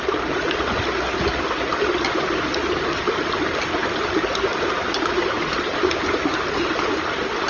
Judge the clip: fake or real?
real